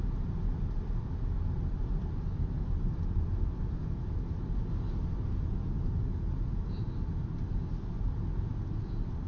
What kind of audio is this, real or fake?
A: real